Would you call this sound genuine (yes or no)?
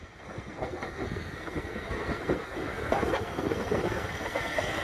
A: no